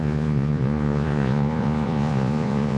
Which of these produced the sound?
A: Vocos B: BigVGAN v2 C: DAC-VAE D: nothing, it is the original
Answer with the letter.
A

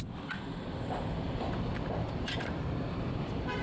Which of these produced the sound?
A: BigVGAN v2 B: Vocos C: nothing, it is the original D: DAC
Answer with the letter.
A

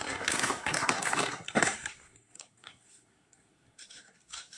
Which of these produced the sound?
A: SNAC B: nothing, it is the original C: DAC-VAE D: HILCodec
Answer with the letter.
A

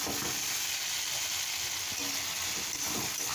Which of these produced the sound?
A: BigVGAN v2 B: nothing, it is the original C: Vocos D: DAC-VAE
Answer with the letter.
B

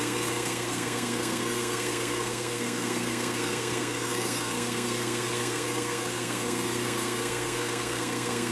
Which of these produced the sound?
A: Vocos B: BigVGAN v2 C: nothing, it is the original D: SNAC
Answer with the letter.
D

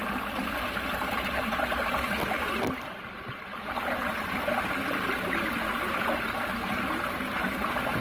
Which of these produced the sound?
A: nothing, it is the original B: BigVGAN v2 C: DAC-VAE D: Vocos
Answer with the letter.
A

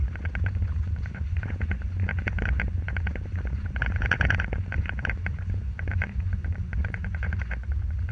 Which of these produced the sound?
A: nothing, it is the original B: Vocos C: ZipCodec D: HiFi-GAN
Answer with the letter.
B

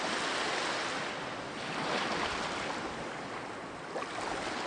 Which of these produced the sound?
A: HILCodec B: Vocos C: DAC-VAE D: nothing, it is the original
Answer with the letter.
D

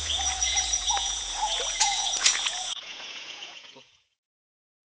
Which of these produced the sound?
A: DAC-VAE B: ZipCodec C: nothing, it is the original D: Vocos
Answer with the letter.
D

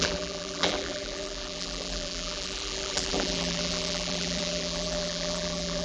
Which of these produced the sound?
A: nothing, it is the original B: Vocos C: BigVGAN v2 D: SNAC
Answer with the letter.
C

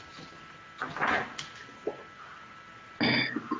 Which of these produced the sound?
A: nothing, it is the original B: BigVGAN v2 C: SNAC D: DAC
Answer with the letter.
A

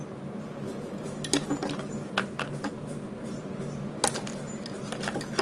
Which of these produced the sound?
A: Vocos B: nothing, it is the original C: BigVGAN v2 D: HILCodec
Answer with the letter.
B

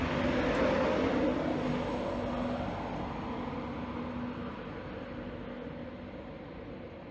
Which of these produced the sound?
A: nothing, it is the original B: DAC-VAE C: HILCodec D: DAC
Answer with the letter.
A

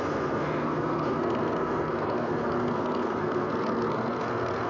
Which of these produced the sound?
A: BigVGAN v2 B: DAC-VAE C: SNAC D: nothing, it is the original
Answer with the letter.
C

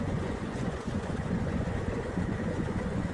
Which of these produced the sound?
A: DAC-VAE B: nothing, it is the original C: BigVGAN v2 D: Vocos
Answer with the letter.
D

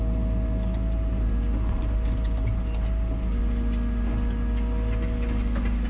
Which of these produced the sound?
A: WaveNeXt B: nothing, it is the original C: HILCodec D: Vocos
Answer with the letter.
B